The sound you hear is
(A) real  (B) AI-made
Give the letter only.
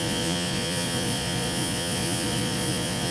B